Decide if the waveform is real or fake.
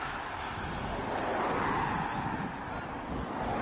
real